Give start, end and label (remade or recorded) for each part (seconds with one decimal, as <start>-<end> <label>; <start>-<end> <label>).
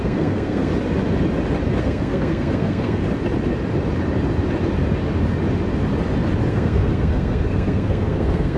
0.0-0.7 remade; 0.7-1.8 recorded; 1.8-3.0 remade; 3.0-6.5 recorded; 6.5-8.6 remade